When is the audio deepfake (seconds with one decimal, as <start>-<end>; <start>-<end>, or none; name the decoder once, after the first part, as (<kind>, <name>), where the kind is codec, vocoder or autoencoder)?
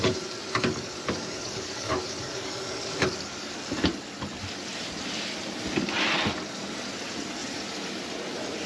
0.4-3.6 (codec, DAC)